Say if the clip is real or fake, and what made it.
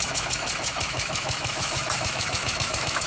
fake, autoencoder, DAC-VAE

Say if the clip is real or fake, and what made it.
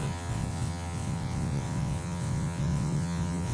fake, vocoder, WaveNeXt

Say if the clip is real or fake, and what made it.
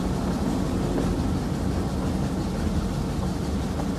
real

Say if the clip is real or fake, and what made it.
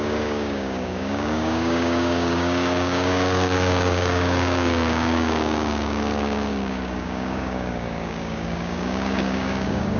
fake, codec, DAC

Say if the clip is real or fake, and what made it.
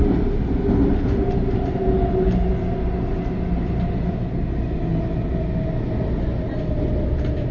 real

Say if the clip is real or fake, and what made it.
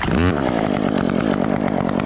real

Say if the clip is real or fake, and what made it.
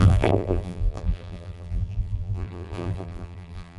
fake, vocoder, BigVGAN v2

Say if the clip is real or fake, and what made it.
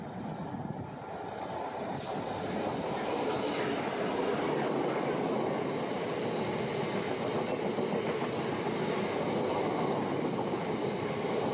real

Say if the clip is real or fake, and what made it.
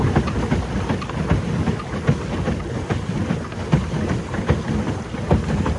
real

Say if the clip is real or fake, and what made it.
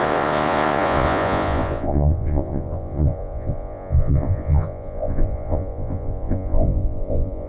fake, vocoder, Vocos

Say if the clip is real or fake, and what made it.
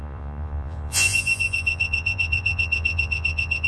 fake, vocoder, Vocos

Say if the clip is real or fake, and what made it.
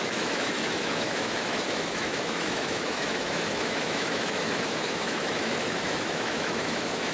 fake, autoencoder, DAC-VAE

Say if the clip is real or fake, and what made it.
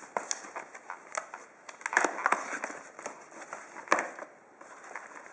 real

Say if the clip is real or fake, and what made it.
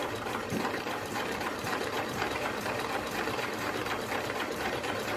fake, vocoder, BigVGAN v2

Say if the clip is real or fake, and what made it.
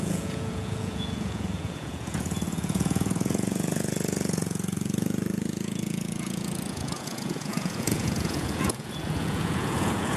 fake, vocoder, Vocos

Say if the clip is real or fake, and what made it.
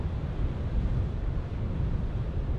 real